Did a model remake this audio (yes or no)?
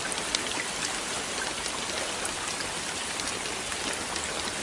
no